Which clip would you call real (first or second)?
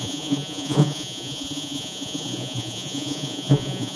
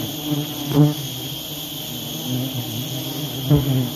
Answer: second